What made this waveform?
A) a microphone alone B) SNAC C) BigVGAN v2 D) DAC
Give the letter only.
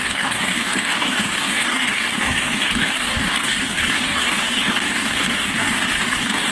D